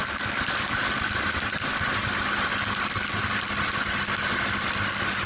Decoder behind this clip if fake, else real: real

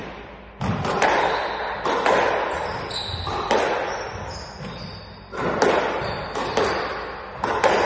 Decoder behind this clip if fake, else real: real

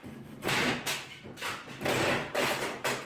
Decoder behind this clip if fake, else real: real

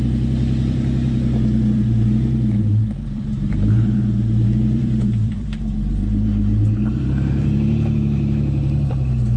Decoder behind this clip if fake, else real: fake, vocoder, BigVGAN v2